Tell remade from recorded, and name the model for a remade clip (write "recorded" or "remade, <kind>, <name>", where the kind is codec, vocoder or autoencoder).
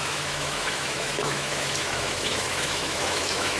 remade, autoencoder, DAC-VAE